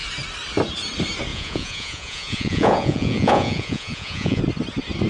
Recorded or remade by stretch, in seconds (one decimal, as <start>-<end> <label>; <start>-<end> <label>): 0.0-1.3 recorded; 1.3-4.4 remade; 4.4-5.1 recorded